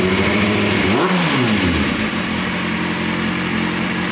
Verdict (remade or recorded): recorded